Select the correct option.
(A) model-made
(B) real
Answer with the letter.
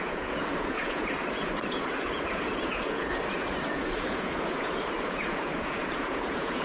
A